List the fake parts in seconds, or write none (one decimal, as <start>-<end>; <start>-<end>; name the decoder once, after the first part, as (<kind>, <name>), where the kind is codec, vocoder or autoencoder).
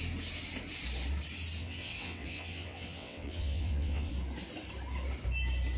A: 1.6-4.1 (vocoder, WaveNeXt)